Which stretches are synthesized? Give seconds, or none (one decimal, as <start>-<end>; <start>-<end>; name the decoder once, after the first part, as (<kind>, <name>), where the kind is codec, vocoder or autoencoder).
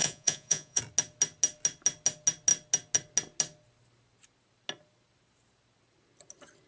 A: 0.0-0.8 (vocoder, Vocos)